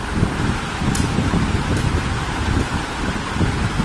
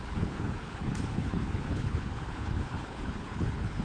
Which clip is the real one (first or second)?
first